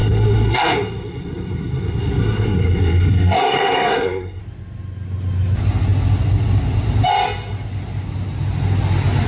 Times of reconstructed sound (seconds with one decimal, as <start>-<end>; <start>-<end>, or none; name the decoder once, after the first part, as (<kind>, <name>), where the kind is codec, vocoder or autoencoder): 0.0-4.4 (codec, SNAC)